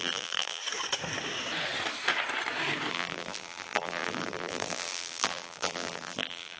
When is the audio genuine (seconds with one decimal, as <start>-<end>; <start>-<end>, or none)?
0.6-2.9